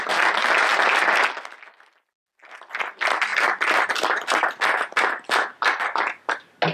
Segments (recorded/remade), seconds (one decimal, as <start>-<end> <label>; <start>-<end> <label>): 0.0-6.7 recorded